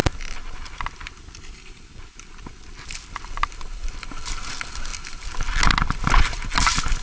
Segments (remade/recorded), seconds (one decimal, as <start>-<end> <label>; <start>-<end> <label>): 0.0-7.0 recorded